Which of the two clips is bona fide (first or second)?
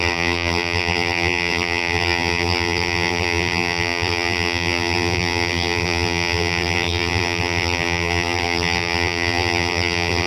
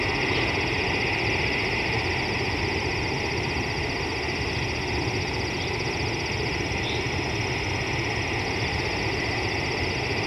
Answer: second